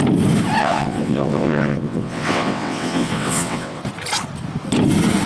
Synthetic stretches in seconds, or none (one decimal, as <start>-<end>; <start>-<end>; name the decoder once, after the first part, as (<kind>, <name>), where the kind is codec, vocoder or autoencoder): 0.6-3.8 (vocoder, WaveNeXt)